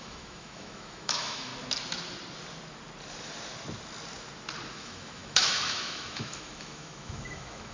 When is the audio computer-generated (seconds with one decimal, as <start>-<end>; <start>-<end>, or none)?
0.0-1.5; 4.7-7.7